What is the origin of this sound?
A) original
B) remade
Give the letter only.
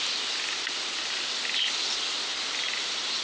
A